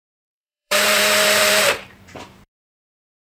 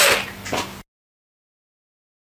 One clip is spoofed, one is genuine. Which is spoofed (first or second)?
first